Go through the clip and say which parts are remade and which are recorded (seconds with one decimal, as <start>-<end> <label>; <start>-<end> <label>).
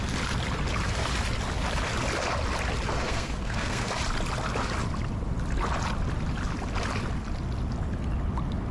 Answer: 0.0-2.9 recorded; 2.9-3.9 remade; 3.9-8.7 recorded